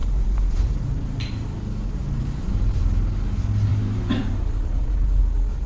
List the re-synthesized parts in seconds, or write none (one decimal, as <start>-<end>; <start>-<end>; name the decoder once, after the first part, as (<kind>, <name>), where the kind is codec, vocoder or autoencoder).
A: 0.0-0.7 (vocoder, BigVGAN v2); 2.0-2.8; 3.7-5.2